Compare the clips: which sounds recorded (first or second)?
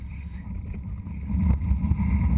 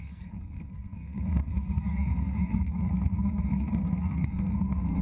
first